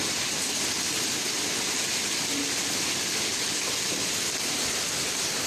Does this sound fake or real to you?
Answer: real